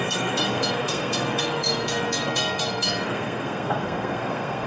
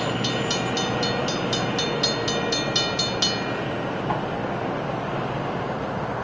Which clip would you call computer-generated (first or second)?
first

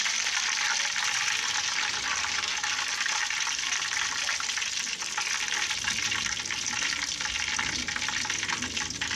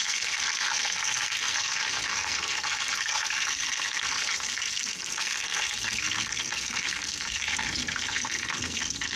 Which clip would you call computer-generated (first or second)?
second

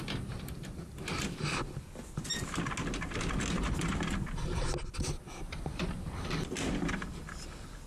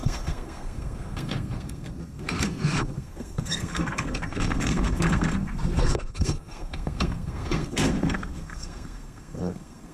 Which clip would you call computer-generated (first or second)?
second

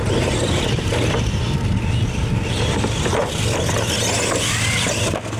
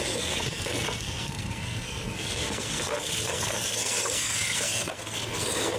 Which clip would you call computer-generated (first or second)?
second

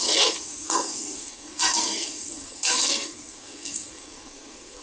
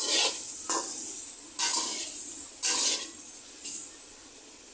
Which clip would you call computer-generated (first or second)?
first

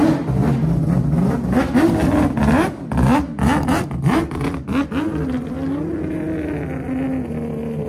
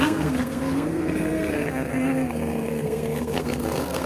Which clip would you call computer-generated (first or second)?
second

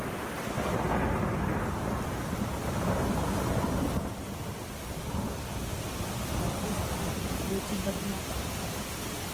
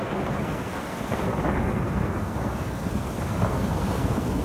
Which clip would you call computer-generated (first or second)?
second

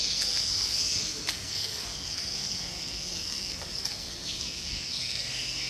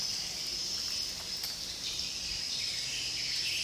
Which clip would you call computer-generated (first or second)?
first